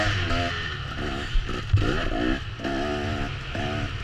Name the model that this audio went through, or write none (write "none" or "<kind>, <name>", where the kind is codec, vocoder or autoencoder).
none